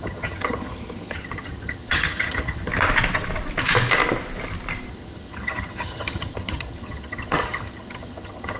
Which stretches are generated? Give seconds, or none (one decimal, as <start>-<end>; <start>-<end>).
0.0-2.7; 4.9-8.6